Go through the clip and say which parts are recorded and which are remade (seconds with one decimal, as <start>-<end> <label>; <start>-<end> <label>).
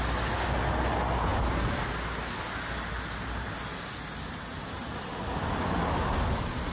0.0-6.7 recorded